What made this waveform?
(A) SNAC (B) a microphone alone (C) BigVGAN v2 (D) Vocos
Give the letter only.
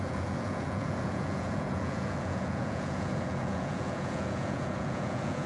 D